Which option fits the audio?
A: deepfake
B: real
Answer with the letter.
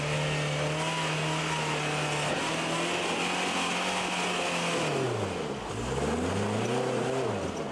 B